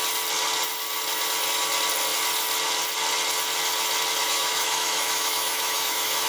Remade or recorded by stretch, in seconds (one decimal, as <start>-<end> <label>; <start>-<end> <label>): 0.0-4.2 recorded; 4.2-6.3 remade

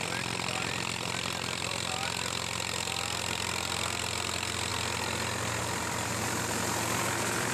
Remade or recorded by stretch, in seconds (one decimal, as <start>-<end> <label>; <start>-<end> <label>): 0.0-4.7 remade; 4.7-5.6 recorded; 5.6-7.5 remade

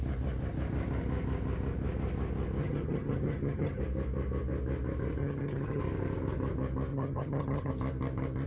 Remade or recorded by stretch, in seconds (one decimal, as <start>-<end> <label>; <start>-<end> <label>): 0.0-2.6 recorded; 2.6-3.8 remade; 3.8-5.2 recorded; 5.2-5.8 remade; 5.8-6.9 recorded; 6.9-7.7 remade; 7.7-8.5 recorded

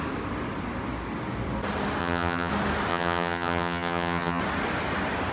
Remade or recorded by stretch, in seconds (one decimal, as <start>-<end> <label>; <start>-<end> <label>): 0.0-2.0 recorded; 2.0-2.5 remade; 2.5-2.9 recorded; 2.9-4.4 remade; 4.4-5.3 recorded

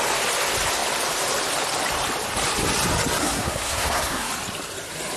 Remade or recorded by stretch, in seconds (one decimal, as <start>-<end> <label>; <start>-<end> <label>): 0.0-3.2 recorded; 3.2-4.3 remade; 4.3-5.2 recorded

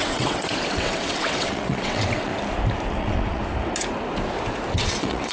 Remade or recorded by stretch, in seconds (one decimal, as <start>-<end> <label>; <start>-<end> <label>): 0.0-2.3 remade; 2.3-2.9 recorded; 2.9-3.4 remade; 3.4-4.8 recorded; 4.8-5.3 remade

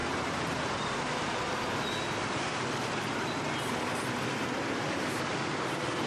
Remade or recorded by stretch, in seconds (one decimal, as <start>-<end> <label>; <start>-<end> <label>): 0.0-3.7 remade; 3.7-6.1 recorded